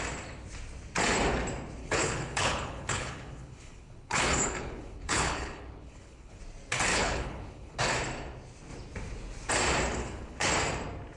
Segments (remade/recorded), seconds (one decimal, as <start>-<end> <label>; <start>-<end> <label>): 0.0-1.8 recorded; 1.8-6.4 remade; 6.4-6.9 recorded; 6.9-7.8 remade; 7.8-10.0 recorded; 10.0-10.5 remade; 10.5-11.2 recorded